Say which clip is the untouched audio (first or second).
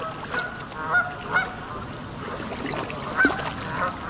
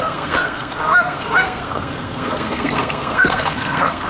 first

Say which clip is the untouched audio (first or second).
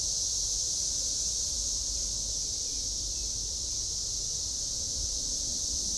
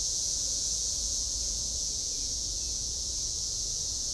first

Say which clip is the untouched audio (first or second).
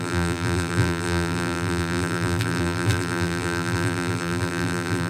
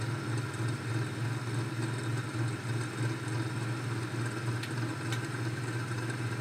second